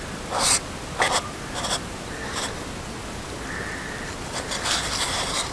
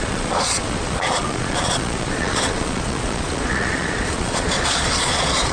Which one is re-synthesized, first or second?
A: second